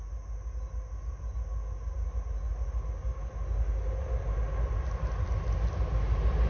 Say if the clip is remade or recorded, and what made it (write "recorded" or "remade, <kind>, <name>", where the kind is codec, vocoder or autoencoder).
recorded